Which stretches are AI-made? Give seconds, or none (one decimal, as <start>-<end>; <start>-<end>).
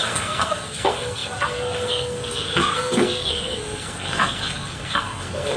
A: 0.0-5.6